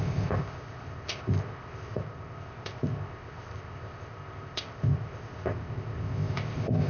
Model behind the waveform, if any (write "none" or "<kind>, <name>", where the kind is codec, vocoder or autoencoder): codec, ZipCodec